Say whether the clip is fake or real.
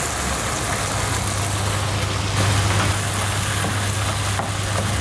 real